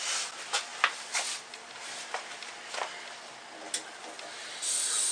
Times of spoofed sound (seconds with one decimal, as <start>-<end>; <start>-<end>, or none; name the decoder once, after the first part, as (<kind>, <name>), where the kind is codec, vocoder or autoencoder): none